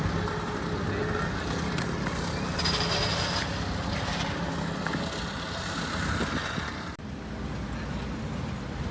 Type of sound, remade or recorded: recorded